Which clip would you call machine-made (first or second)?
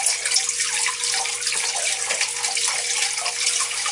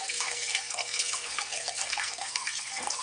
second